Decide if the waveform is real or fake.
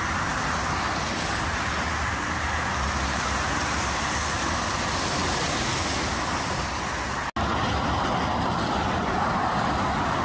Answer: real